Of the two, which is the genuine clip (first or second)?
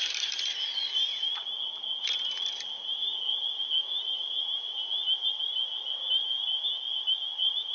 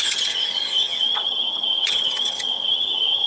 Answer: first